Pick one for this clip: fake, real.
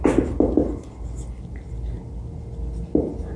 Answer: real